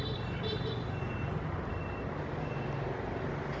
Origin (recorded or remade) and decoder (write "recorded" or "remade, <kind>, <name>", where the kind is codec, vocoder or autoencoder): recorded